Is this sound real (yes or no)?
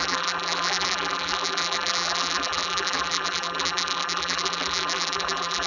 no